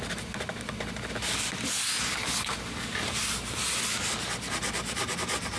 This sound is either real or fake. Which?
real